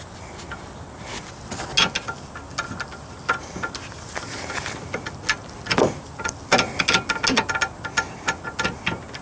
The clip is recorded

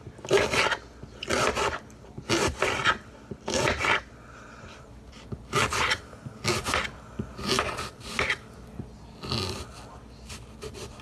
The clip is recorded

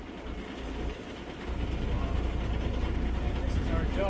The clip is recorded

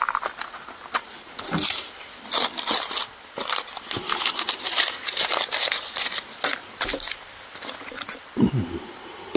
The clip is recorded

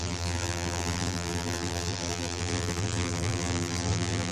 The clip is remade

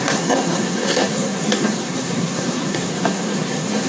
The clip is remade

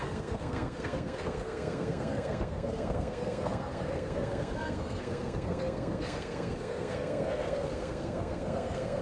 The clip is remade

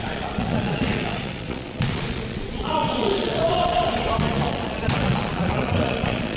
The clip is remade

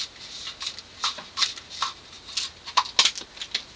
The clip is recorded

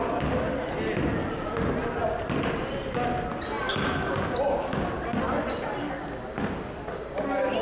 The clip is recorded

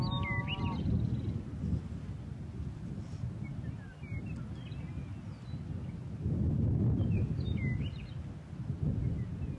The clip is recorded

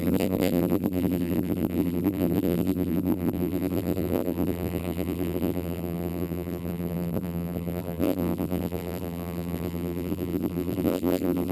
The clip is remade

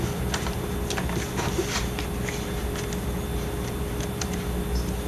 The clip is recorded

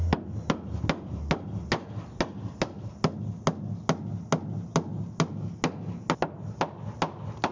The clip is recorded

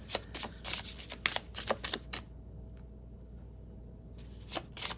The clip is recorded